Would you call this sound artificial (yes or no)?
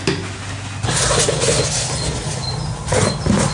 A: no